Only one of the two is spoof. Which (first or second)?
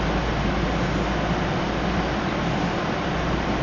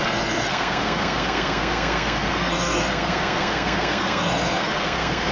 second